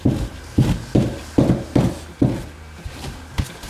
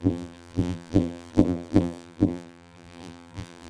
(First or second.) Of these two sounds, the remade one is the second